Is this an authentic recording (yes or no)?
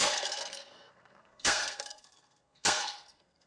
no